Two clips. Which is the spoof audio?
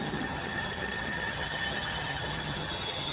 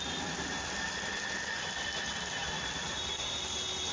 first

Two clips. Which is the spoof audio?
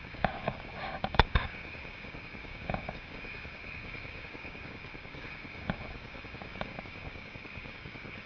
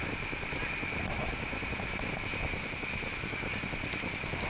first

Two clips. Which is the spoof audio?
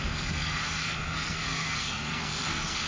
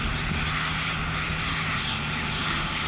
first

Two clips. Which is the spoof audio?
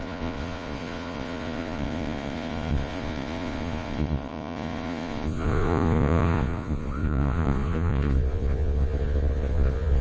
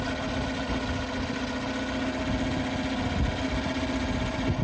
first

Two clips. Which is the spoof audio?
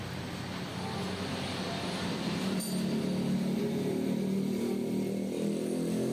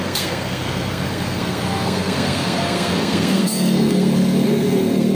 second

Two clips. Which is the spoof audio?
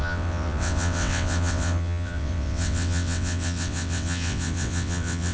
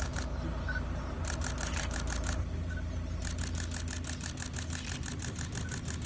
first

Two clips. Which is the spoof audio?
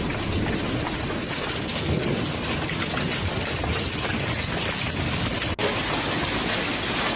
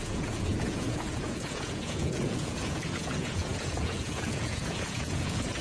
second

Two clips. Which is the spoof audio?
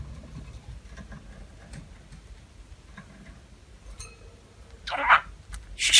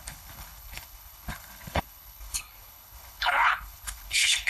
second